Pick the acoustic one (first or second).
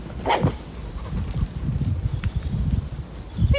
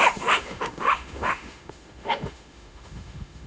first